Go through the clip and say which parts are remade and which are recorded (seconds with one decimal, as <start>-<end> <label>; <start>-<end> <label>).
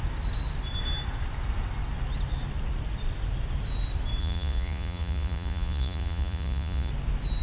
0.0-4.2 recorded; 4.2-6.9 remade; 6.9-7.4 recorded